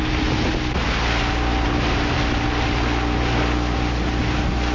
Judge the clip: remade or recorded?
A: recorded